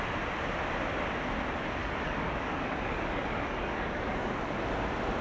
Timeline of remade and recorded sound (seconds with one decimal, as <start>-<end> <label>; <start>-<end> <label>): 0.0-1.8 recorded; 1.8-4.6 remade; 4.6-5.2 recorded